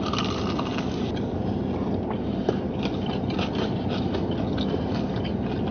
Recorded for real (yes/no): yes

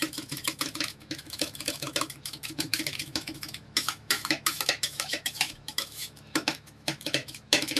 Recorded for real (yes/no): no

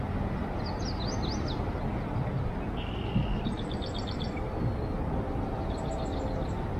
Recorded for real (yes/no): yes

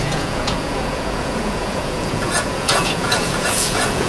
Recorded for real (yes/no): no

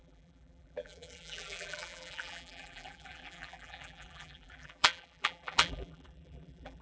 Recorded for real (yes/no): no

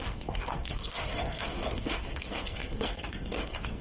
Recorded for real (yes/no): no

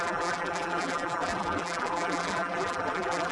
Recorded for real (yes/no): no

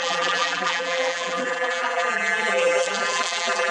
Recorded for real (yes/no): no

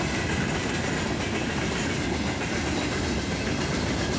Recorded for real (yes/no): yes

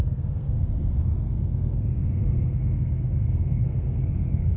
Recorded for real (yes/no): no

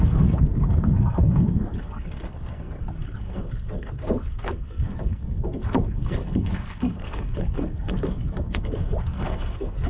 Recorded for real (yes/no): no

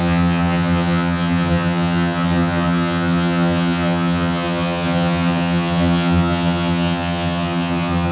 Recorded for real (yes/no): no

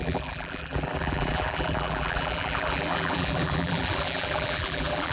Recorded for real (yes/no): no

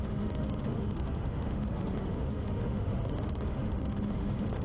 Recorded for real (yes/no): no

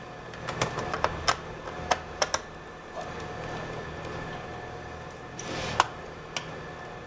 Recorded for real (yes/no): yes